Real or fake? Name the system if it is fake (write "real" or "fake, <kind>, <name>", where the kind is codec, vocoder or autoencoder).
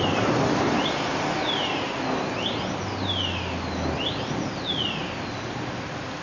real